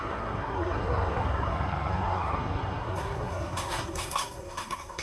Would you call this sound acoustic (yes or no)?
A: no